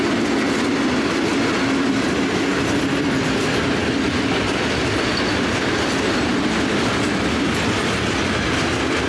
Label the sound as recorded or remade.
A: recorded